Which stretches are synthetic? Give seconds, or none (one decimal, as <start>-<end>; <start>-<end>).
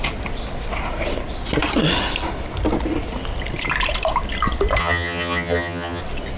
4.8-6.0